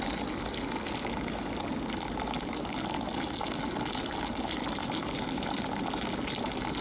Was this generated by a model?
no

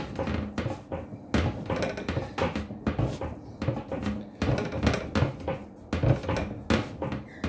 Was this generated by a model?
no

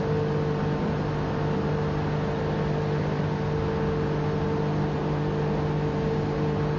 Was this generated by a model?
no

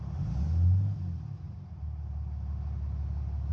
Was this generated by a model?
no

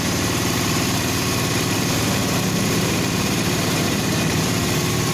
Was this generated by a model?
yes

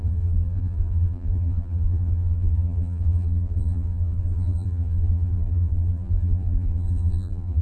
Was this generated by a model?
yes